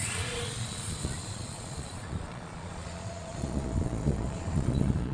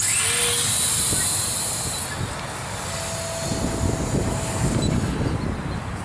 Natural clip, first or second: second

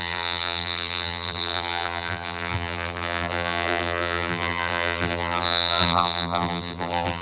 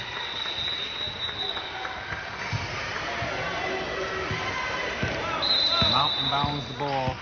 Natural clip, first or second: second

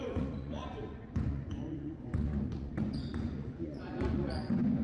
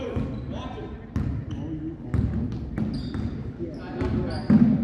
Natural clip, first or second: second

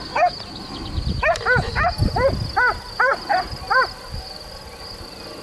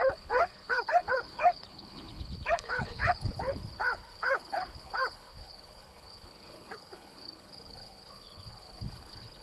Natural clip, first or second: first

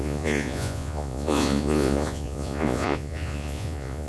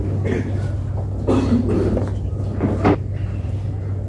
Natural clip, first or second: second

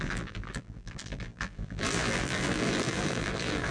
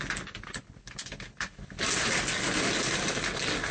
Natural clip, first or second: second